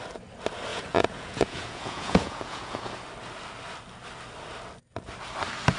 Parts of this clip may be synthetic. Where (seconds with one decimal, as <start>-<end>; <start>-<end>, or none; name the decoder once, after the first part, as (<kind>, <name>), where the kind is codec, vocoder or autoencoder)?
0.7-2.9 (vocoder, Vocos)